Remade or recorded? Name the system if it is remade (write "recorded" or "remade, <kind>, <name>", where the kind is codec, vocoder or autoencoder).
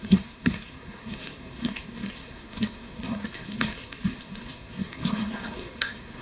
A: remade, codec, SNAC